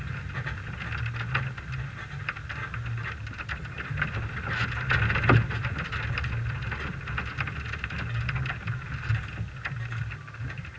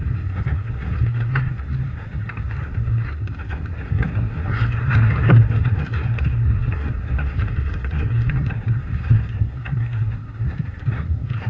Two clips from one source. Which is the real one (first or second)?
first